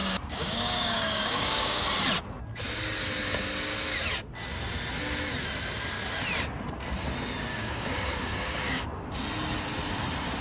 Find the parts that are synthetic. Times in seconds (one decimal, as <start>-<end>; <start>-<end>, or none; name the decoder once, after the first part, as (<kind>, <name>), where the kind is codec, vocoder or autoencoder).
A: 0.0-1.8 (codec, DAC); 7.5-8.8